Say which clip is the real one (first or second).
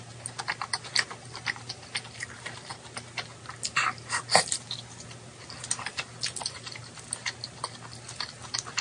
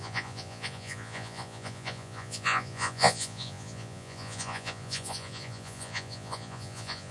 first